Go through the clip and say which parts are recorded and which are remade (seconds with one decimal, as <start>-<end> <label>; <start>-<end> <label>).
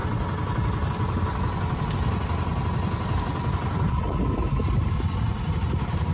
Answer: 0.0-6.1 recorded